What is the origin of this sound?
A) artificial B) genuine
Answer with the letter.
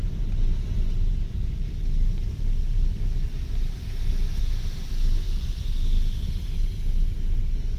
B